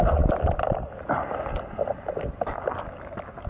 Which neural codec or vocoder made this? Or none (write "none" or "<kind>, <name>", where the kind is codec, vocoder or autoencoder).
none